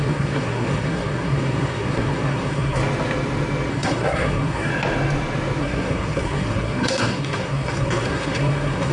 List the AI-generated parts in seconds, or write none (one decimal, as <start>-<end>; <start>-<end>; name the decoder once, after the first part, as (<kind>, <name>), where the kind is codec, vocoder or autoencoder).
0.0-2.8 (codec, SNAC); 3.7-4.7; 5.6-8.9